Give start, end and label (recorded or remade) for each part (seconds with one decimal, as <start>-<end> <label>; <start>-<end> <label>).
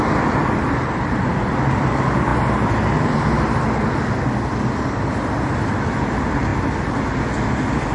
0.0-7.9 recorded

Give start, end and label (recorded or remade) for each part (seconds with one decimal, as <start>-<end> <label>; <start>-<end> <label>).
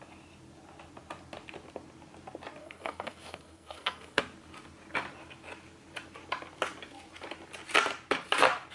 0.0-2.6 recorded; 2.6-4.2 remade; 4.2-8.7 recorded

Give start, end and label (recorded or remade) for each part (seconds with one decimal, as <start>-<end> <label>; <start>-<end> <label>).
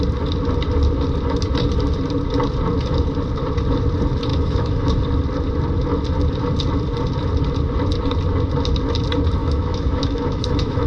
0.0-4.3 recorded; 4.3-5.0 remade; 5.0-9.4 recorded; 9.4-10.9 remade